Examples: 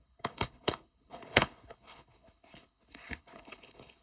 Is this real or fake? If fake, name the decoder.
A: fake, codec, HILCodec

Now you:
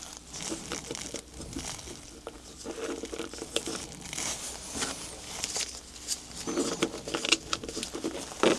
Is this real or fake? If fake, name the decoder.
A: real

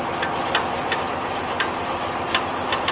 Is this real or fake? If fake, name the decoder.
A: real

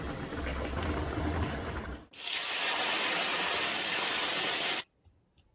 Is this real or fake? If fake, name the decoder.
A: real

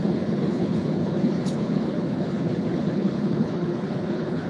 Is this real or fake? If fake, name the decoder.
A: fake, codec, HILCodec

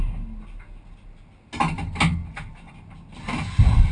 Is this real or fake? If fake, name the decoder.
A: real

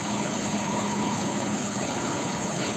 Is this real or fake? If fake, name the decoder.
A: fake, codec, HILCodec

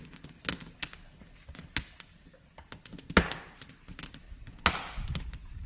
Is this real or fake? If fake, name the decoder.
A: real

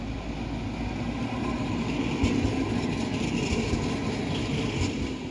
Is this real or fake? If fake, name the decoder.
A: real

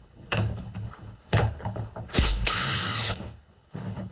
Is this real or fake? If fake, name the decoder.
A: fake, codec, HILCodec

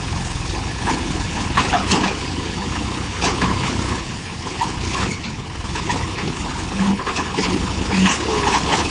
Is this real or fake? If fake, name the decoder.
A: fake, codec, HILCodec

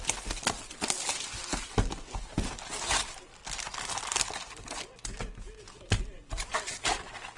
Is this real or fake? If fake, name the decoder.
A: real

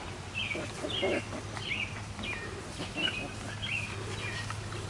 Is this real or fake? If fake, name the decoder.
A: real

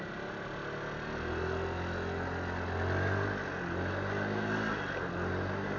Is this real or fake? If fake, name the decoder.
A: real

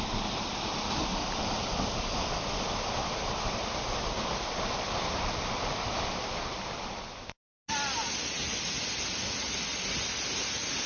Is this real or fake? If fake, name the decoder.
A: real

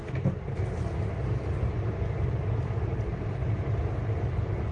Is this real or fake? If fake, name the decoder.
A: real